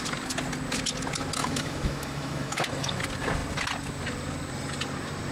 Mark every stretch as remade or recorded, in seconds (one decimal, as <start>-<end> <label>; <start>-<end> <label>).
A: 0.0-1.4 recorded; 1.4-3.0 remade; 3.0-5.3 recorded